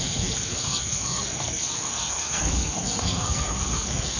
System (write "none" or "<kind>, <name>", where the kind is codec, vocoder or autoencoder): codec, SNAC